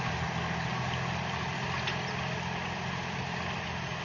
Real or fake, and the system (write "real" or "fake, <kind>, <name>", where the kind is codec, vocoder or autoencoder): real